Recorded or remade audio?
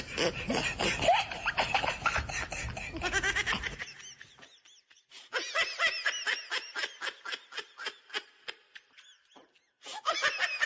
recorded